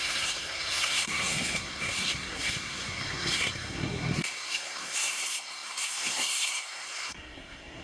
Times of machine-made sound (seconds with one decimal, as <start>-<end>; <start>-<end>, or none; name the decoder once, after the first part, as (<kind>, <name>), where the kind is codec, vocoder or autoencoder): 0.0-7.8 (codec, SNAC)